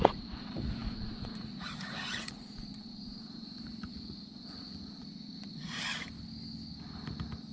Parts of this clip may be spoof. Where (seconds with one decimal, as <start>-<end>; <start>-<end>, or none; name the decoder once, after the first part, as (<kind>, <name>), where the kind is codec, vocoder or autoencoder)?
0.0-5.9 (vocoder, Vocos)